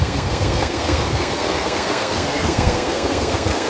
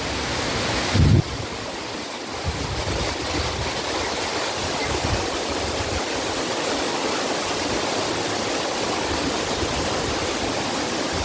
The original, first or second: second